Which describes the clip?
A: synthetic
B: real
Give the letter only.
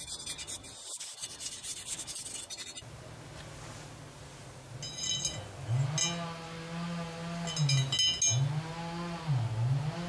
B